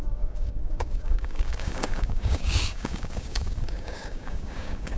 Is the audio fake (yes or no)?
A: yes